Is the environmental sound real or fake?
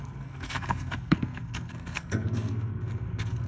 fake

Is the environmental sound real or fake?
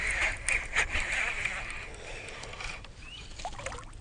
real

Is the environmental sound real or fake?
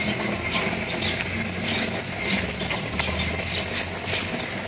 fake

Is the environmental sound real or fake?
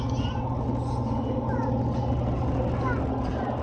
real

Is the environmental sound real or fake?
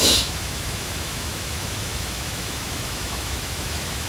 fake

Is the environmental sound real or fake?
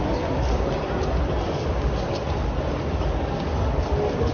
real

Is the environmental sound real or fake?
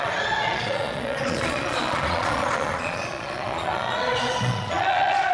fake